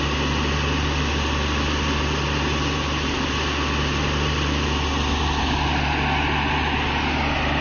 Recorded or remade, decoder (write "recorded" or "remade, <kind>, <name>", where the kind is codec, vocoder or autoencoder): recorded